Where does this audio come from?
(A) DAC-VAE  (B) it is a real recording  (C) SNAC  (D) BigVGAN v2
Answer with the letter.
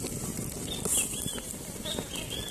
B